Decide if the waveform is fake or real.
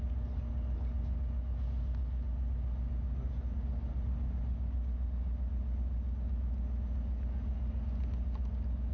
real